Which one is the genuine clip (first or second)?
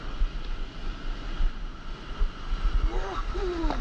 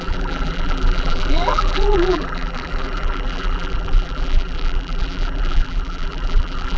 first